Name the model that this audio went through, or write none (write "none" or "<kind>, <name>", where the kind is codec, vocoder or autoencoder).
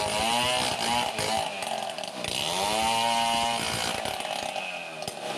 none